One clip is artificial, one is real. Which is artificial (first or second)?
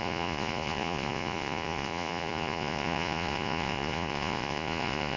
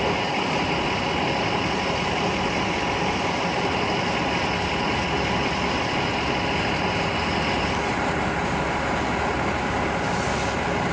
first